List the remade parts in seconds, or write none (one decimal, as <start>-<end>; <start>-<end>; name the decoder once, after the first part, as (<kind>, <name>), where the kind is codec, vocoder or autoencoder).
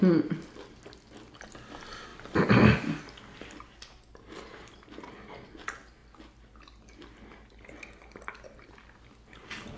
none